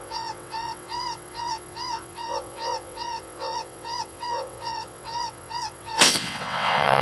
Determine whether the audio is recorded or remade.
remade